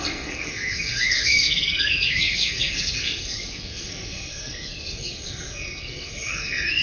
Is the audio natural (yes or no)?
no